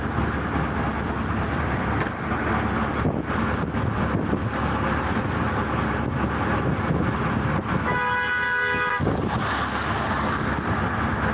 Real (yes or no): yes